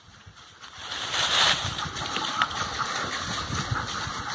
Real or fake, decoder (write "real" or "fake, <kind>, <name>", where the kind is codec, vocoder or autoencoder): real